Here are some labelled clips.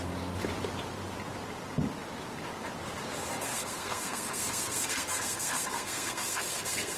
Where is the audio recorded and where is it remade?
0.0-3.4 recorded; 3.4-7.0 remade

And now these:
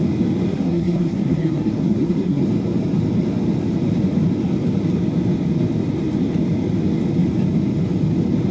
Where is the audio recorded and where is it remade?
0.0-0.5 recorded; 0.5-2.4 remade; 2.4-8.5 recorded

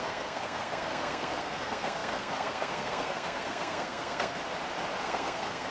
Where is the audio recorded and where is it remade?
0.0-4.4 remade; 4.4-5.0 recorded; 5.0-5.7 remade